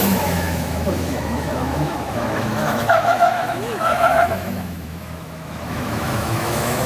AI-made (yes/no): yes